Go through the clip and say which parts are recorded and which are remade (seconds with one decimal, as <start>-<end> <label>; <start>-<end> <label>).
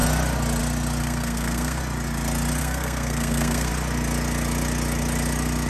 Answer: 0.0-1.0 recorded; 1.0-1.8 remade; 1.8-2.6 recorded; 2.6-3.7 remade; 3.7-5.7 recorded